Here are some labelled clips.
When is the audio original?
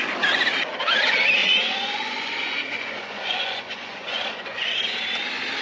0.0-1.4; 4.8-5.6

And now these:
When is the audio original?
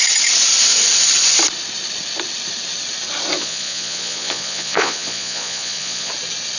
0.0-3.4; 6.1-6.6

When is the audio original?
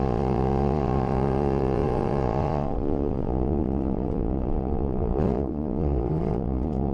none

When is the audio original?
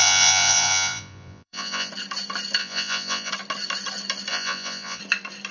1.9-2.6; 3.3-4.3; 5.0-5.5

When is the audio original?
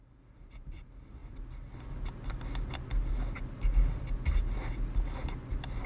0.0-5.9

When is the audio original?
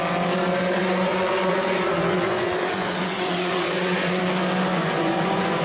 0.0-0.8; 4.2-4.7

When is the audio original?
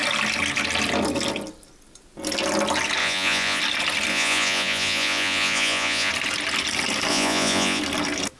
0.0-3.0; 3.6-4.1; 6.1-7.1; 7.8-8.4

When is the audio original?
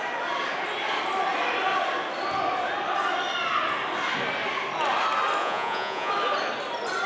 0.0-5.4; 6.1-7.1